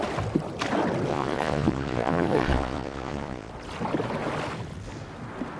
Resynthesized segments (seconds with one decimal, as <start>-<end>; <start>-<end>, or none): 1.1-3.5